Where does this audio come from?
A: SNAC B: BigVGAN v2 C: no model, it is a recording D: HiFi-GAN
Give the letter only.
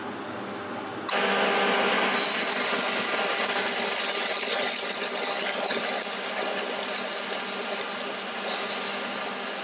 C